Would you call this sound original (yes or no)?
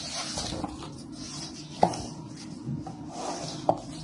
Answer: yes